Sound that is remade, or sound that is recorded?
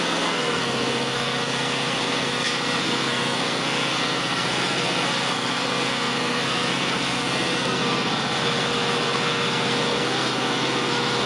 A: remade